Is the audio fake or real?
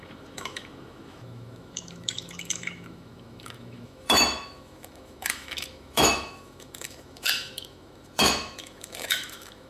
fake